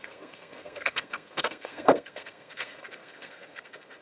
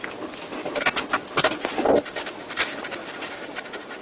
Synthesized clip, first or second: first